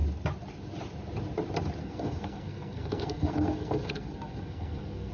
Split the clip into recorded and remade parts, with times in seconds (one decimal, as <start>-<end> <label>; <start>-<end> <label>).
0.0-1.8 recorded; 1.8-5.1 remade